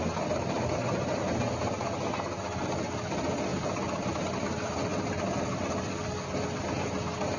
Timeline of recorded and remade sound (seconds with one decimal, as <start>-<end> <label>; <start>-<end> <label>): 0.0-7.4 recorded